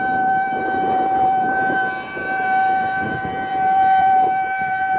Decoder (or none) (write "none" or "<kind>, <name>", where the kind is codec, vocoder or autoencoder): vocoder, BigVGAN v2